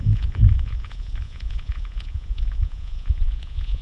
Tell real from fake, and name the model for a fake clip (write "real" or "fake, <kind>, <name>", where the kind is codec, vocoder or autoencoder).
fake, vocoder, Vocos